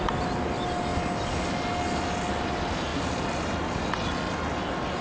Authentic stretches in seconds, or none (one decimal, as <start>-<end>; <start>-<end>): 0.0-5.0